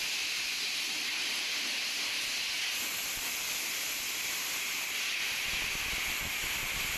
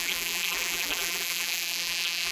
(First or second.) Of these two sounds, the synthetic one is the second